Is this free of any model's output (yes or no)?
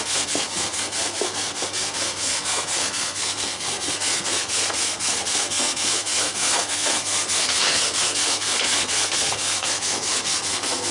no